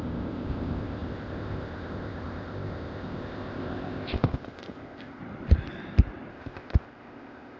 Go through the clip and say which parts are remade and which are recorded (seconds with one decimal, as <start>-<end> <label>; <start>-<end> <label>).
0.0-5.2 remade; 5.2-6.3 recorded; 6.3-7.6 remade